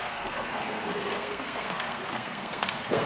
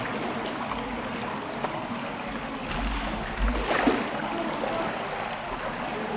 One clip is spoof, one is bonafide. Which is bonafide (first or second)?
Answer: second